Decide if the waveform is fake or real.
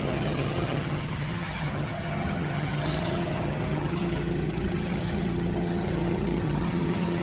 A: fake